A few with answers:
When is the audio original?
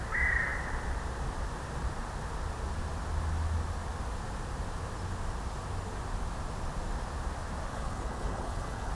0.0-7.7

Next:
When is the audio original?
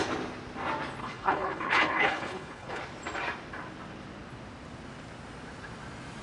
0.0-1.0; 2.8-6.2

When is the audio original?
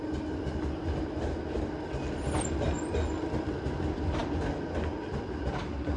0.0-6.0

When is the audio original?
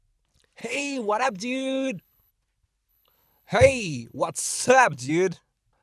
0.0-0.6; 2.3-2.9; 5.1-5.8